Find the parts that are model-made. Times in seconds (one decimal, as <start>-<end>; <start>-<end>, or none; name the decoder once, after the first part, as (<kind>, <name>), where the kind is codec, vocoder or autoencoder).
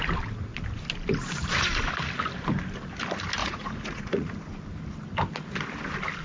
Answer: 3.4-4.3 (vocoder, Vocos)